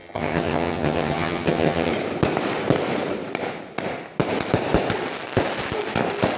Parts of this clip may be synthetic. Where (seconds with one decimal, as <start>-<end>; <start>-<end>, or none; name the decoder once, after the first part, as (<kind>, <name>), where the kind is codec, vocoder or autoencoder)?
0.0-1.9 (vocoder, HiFi-GAN)